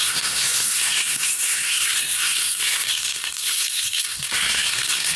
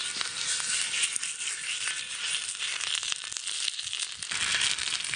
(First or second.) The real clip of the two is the second